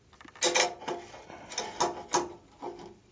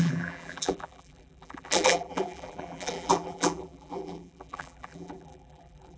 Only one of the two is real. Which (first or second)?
first